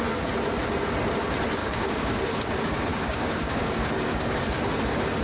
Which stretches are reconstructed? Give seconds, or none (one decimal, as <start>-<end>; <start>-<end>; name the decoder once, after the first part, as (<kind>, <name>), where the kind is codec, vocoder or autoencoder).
1.6-2.4 (codec, DAC); 2.9-4.4